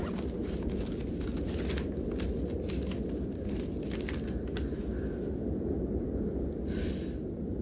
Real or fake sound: real